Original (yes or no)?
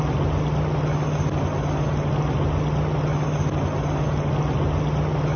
yes